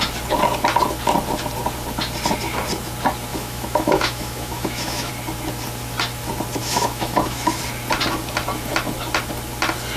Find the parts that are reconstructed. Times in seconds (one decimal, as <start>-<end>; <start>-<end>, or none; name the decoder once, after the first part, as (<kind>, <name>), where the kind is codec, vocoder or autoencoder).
3.3-5.1 (autoencoder, DAC-VAE); 6.6-7.6